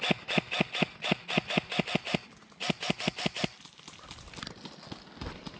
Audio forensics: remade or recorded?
recorded